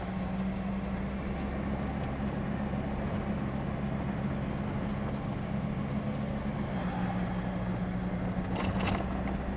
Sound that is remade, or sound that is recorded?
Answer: recorded